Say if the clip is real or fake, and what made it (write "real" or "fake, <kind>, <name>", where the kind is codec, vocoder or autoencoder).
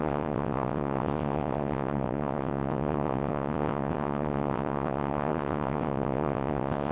fake, vocoder, WaveNeXt